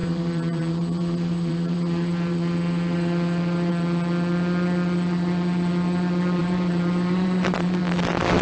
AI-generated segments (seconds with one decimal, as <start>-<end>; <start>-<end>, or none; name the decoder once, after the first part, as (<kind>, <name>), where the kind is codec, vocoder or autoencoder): 0.0-3.7 (vocoder, BigVGAN v2); 6.4-7.8